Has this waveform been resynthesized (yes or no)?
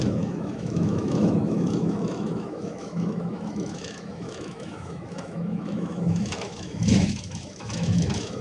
yes